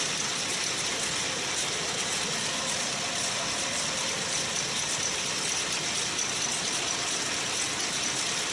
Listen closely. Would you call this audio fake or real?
real